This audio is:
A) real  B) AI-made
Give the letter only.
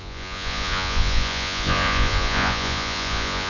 B